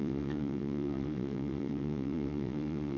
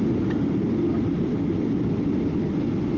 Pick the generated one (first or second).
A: first